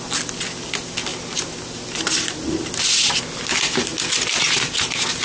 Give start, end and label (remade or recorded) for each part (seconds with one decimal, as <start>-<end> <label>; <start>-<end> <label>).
0.0-5.2 recorded